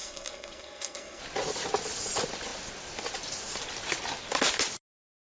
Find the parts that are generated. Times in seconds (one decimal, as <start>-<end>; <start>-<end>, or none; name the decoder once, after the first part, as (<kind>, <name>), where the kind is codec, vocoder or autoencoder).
0.0-1.2 (codec, SNAC)